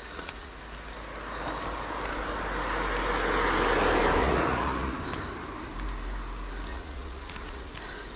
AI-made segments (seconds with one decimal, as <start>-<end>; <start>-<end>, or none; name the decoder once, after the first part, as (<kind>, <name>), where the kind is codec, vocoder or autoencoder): 0.0-0.6 (vocoder, Vocos); 4.2-5.0; 6.7-7.7